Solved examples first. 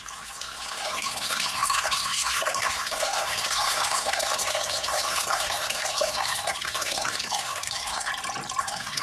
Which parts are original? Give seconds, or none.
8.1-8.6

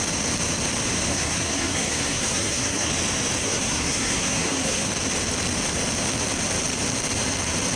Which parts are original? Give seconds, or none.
0.0-1.1; 2.9-3.4; 4.9-7.8

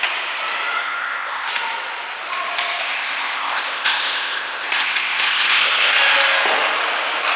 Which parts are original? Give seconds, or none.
0.0-0.8; 1.5-2.8; 5.9-7.4

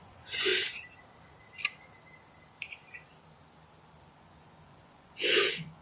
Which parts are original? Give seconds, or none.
0.5-4.0

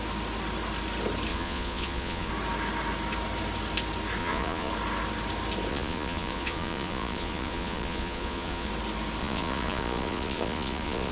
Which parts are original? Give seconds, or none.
0.0-1.3; 2.3-4.2; 4.7-5.7; 8.7-9.2

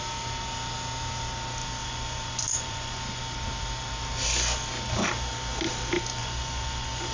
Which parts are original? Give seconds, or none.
0.0-1.8; 3.2-6.2